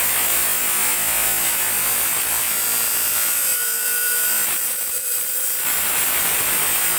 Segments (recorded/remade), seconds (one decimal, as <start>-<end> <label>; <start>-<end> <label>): 0.0-7.0 recorded